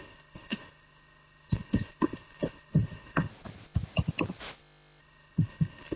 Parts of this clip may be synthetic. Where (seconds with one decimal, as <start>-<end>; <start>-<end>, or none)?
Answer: 0.0-3.3; 5.0-6.0